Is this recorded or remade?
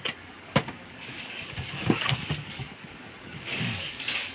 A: remade